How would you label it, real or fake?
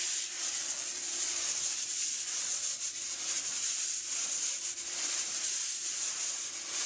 real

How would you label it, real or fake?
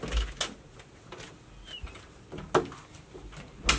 real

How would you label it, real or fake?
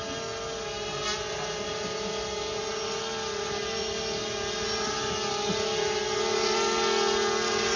real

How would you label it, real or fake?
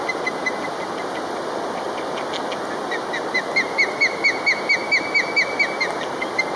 real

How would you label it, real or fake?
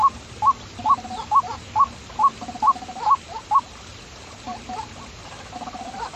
real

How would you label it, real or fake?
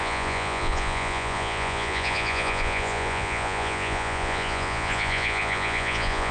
fake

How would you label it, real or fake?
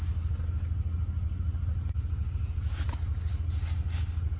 real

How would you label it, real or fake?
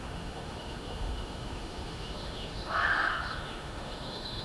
fake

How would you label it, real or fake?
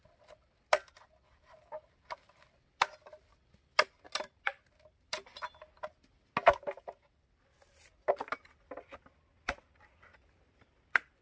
real